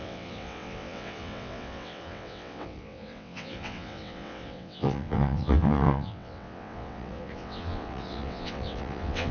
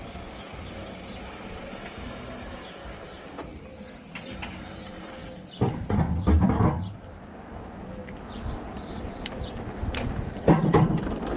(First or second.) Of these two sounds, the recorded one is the second